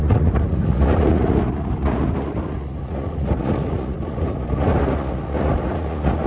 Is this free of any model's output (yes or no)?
no